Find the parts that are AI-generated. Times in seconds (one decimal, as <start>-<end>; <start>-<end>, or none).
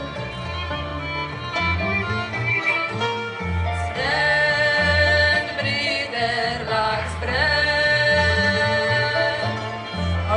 2.5-3.4